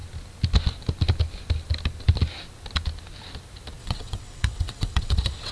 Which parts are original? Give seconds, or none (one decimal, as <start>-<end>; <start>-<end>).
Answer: 0.0-3.8